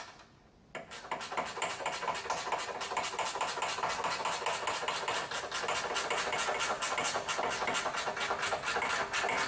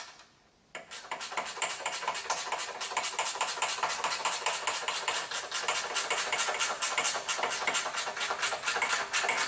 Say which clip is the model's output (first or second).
second